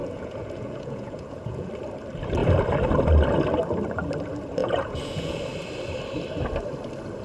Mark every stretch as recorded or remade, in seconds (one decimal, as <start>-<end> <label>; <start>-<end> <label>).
0.0-1.7 remade; 1.7-4.6 recorded; 4.6-5.4 remade; 5.4-7.2 recorded